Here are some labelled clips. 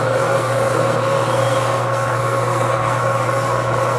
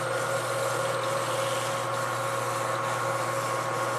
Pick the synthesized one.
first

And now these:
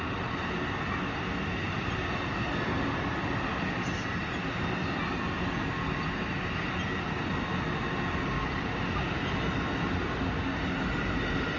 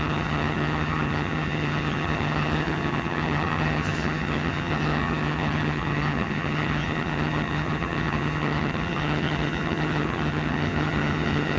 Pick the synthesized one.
second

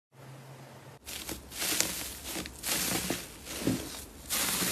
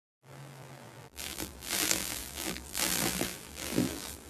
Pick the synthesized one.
second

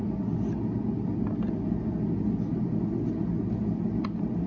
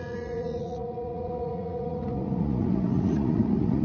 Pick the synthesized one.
second